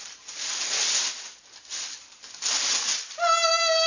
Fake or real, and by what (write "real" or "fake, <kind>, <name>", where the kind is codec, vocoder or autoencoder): real